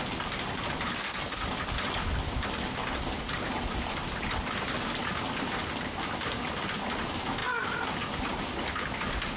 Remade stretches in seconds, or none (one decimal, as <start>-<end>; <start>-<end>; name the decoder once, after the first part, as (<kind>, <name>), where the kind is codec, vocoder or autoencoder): none